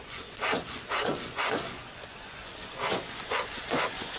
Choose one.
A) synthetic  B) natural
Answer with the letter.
A